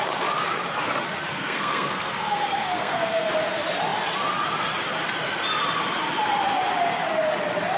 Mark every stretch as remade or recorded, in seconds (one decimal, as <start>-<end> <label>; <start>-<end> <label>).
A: 0.0-1.3 recorded; 1.3-3.3 remade; 3.3-7.8 recorded